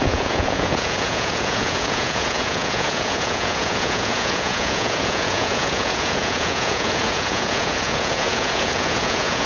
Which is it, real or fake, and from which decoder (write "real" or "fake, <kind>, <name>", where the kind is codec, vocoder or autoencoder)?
fake, vocoder, Vocos